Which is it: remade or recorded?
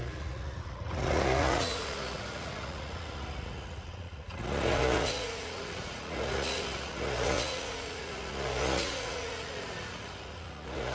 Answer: remade